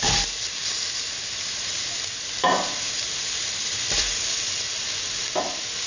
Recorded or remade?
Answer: remade